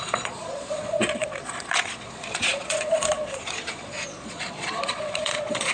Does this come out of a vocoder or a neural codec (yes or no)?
yes